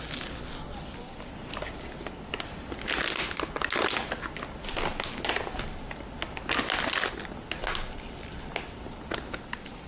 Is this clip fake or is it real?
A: real